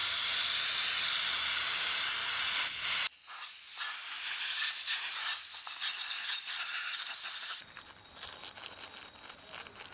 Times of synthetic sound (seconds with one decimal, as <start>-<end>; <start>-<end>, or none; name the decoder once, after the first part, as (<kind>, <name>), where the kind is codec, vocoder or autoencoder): 0.0-0.8 (vocoder, BigVGAN v2); 6.7-7.2